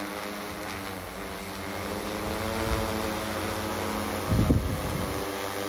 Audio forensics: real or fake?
real